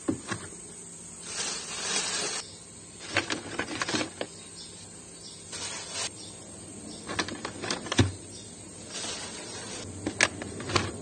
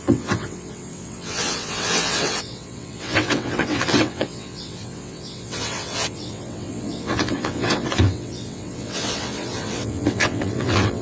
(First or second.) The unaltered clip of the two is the first